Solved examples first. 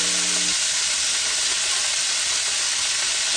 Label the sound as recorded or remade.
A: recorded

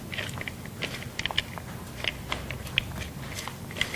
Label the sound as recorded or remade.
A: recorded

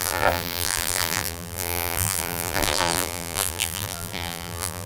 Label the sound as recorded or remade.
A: remade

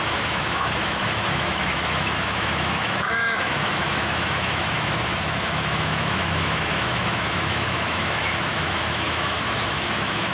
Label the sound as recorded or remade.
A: remade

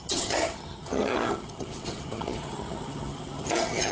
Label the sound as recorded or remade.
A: remade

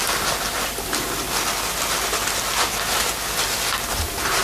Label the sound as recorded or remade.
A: recorded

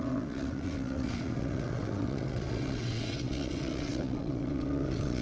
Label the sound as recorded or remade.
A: remade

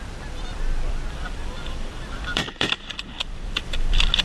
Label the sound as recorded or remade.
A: remade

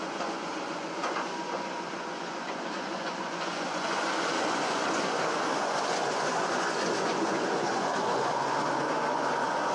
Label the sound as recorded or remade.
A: remade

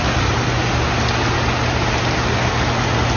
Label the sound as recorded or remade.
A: recorded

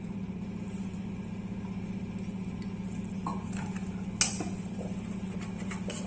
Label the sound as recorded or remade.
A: recorded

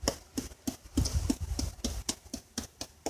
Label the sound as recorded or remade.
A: recorded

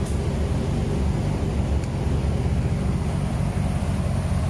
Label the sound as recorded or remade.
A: recorded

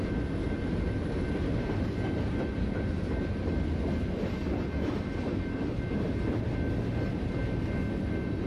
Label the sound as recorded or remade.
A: recorded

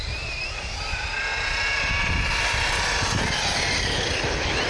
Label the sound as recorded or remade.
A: recorded